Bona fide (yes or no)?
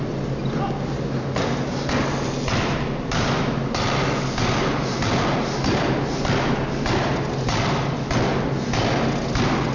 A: yes